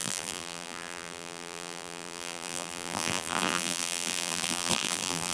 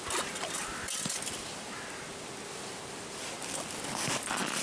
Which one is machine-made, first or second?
first